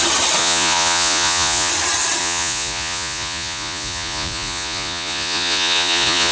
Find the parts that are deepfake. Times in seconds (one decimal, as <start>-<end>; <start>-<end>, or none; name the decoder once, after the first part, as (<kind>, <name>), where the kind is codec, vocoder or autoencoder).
0.4-1.7 (vocoder, Vocos); 2.2-6.3